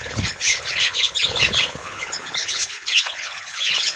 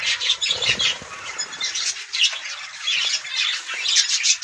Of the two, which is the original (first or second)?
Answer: second